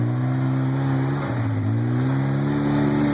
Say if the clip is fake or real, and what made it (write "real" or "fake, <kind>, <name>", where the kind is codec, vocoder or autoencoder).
real